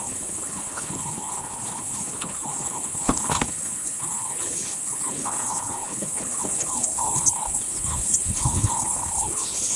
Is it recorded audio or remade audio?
remade